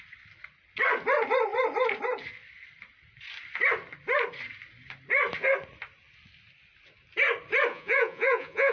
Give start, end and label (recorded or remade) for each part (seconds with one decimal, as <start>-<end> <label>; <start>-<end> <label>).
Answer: 0.0-7.7 recorded; 7.7-8.7 remade